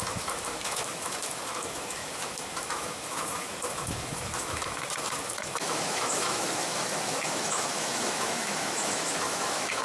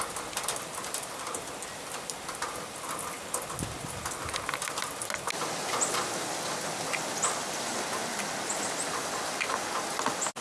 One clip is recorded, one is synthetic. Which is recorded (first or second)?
second